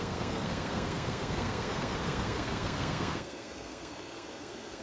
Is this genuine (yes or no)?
no